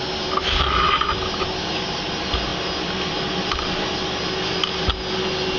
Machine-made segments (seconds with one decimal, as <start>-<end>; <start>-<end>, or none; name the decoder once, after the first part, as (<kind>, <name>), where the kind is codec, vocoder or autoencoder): none